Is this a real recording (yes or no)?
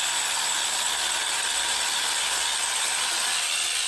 yes